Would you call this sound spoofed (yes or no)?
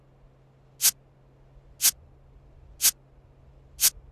no